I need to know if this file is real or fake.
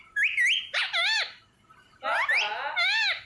real